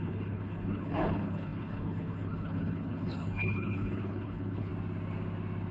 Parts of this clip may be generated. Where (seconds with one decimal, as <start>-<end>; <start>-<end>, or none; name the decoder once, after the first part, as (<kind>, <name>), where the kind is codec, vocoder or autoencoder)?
0.0-4.7 (codec, HILCodec)